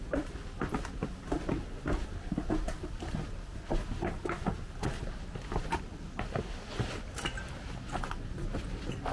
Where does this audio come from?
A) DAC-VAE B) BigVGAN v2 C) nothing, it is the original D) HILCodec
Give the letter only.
C